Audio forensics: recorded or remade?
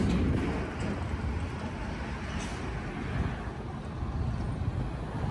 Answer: recorded